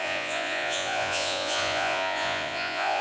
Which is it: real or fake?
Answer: fake